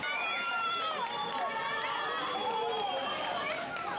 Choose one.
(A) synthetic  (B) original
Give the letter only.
B